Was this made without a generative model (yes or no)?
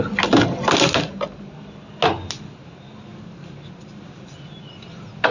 yes